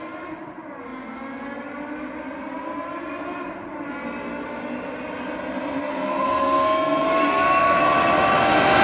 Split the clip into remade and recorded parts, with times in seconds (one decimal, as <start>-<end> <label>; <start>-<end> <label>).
0.0-5.8 recorded; 5.8-7.8 remade; 7.8-8.8 recorded